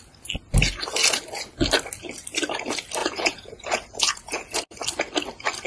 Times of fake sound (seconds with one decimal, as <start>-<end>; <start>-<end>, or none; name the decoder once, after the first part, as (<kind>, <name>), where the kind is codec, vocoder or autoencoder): 3.0-4.6 (vocoder, Vocos)